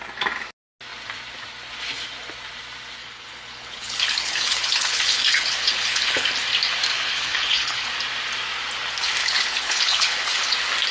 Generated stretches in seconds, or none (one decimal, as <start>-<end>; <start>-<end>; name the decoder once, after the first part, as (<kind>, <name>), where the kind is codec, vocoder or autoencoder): 3.0-6.3 (codec, HILCodec); 6.9-7.9; 9.2-10.5